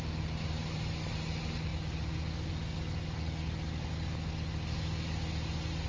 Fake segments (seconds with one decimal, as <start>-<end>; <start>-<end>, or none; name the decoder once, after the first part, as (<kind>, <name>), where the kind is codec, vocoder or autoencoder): none